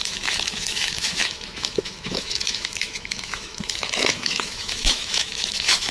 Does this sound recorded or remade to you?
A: remade